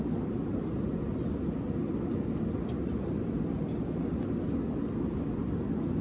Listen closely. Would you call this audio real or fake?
real